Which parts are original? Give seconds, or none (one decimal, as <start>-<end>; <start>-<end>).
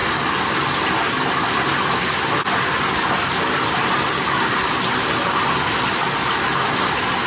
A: 0.0-7.3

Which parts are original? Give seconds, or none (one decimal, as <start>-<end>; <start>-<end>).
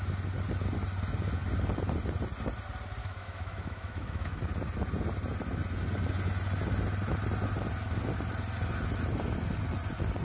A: 0.0-3.0; 4.4-10.2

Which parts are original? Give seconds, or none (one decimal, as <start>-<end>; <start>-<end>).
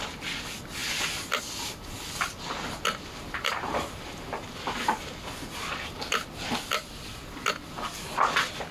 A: 0.0-8.7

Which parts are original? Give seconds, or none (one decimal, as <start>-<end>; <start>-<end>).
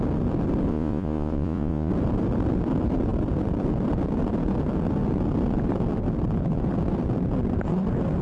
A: 0.0-0.7; 1.9-8.2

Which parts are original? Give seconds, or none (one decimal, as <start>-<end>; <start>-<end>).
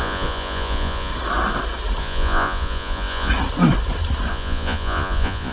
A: 1.1-2.0; 3.3-4.3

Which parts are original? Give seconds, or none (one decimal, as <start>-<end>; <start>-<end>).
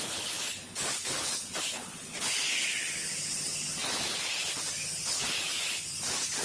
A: none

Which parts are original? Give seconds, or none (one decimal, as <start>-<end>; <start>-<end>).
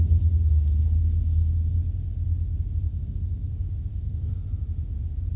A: 0.0-2.9; 3.5-3.9; 4.4-5.4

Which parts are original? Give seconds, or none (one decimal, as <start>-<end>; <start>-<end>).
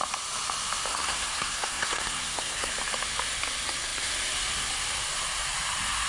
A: 0.0-0.9; 2.7-6.1